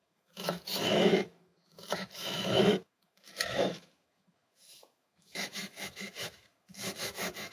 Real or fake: fake